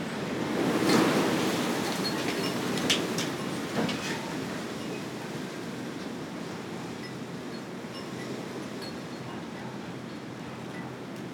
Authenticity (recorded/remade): recorded